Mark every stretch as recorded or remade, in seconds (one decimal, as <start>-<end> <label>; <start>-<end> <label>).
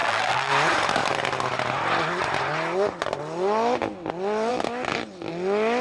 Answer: 0.0-0.5 remade; 0.5-5.8 recorded